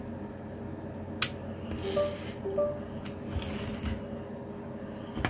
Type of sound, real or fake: real